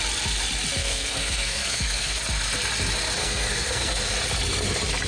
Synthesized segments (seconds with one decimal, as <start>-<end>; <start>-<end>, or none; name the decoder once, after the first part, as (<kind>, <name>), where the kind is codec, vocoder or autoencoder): 0.8-2.2 (codec, SNAC); 3.2-4.1